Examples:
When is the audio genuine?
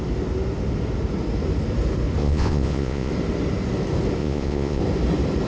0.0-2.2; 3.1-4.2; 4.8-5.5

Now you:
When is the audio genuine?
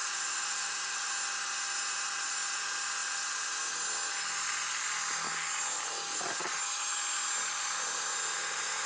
1.1-8.9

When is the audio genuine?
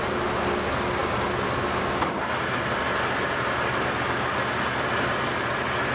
0.0-5.9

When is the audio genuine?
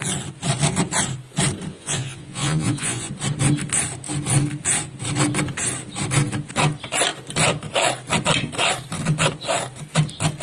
0.0-1.7; 3.1-10.4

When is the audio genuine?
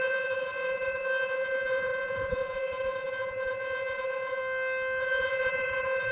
4.4-5.0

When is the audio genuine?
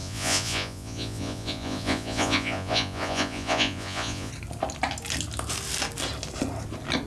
4.3-7.1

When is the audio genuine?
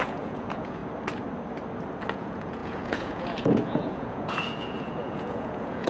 0.8-2.1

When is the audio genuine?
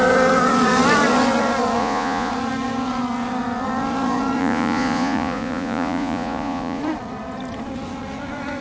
0.0-1.8; 2.3-4.4; 6.8-8.6